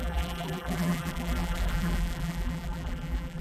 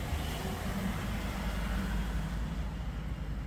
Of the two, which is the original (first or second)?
second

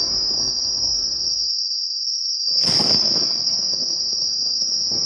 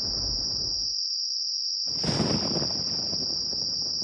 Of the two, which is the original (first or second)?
second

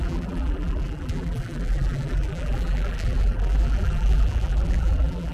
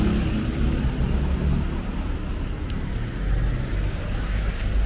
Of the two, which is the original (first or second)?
second